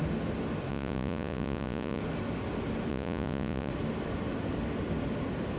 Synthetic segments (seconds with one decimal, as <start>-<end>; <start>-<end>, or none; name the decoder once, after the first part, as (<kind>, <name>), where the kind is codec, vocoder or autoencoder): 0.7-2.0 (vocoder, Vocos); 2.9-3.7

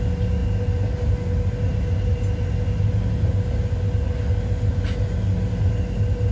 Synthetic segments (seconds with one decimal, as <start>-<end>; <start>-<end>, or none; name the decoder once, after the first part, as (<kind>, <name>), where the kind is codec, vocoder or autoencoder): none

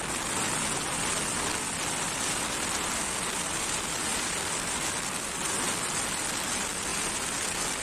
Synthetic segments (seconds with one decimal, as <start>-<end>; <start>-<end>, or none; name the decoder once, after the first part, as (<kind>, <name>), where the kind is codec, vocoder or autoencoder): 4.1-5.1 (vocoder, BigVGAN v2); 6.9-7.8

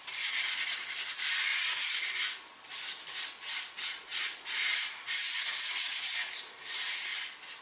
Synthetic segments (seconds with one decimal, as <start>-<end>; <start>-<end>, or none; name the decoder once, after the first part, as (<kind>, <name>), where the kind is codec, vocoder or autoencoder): 0.0-1.5 (vocoder, BigVGAN v2); 2.4-4.1; 6.0-7.6

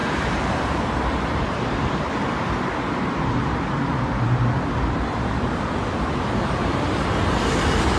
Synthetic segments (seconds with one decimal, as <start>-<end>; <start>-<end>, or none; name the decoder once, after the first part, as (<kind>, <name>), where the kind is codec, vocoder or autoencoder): 0.0-1.9 (vocoder, BigVGAN v2)